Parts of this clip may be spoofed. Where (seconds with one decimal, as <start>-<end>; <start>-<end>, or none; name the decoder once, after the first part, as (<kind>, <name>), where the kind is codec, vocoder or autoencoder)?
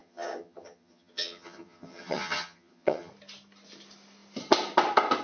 0.0-3.1 (vocoder, HiFi-GAN)